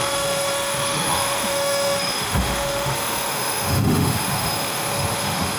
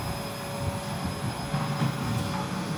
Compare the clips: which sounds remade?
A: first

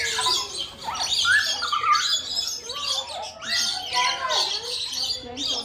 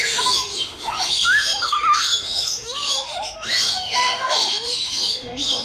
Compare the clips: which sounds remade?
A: second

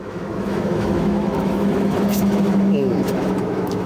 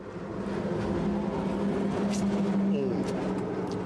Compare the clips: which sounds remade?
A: first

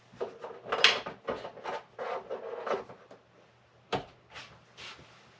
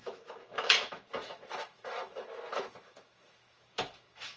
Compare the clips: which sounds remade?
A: second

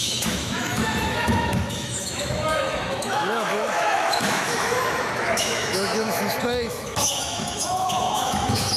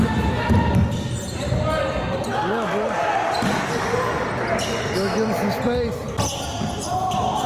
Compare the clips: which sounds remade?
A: first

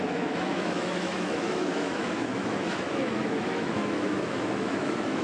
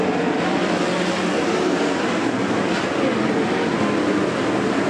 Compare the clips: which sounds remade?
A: first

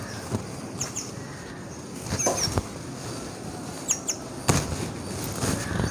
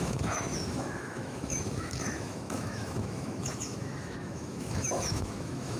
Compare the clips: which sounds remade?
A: second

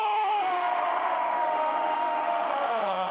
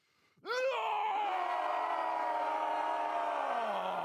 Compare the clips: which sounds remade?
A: first